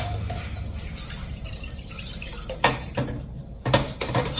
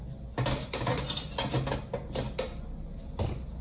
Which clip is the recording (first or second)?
second